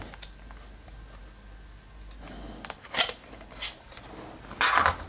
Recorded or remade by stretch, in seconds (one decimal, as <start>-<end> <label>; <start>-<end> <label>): 0.0-5.1 recorded